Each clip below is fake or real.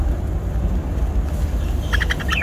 real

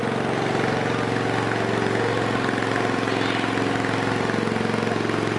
real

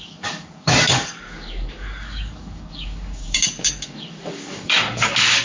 fake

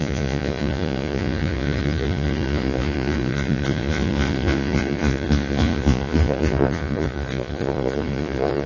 fake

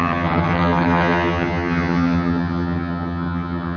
fake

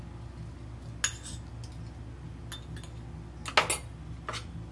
real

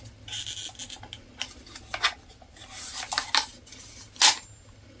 real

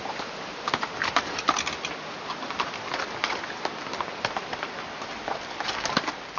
real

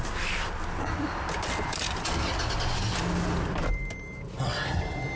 real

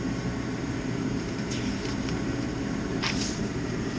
fake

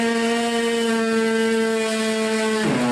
real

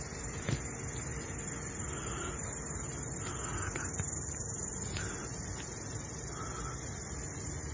real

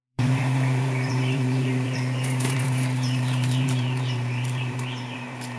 fake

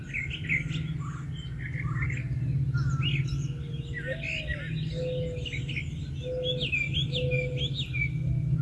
real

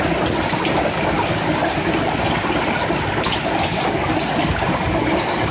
real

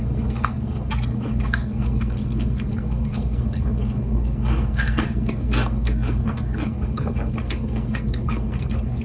fake